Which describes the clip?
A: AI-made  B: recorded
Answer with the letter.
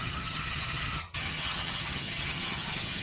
A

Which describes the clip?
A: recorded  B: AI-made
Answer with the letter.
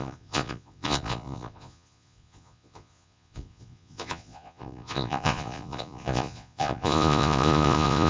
B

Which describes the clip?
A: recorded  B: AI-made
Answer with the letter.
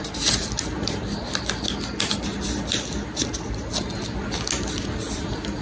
A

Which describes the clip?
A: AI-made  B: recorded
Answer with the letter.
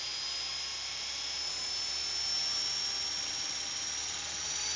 B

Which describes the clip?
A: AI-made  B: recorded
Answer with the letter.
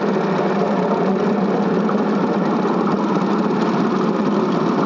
B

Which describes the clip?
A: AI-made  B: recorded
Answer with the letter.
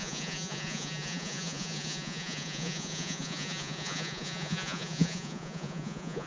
A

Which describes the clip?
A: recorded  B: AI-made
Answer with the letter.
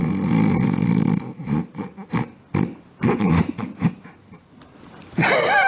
A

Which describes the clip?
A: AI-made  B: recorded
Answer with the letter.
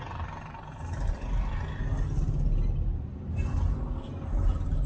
B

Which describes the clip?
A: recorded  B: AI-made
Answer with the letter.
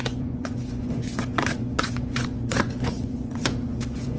B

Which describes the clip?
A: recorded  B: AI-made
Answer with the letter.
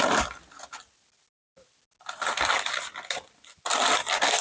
A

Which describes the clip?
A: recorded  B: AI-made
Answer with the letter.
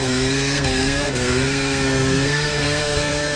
B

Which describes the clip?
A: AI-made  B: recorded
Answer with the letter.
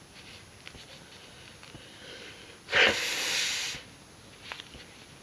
B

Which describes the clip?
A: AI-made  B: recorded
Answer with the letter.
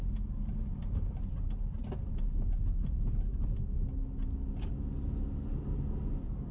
B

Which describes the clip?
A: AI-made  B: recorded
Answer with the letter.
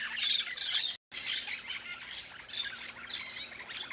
B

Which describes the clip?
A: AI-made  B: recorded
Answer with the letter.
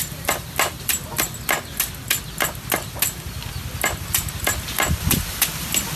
B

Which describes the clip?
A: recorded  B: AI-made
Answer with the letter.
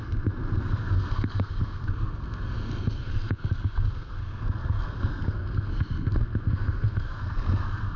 B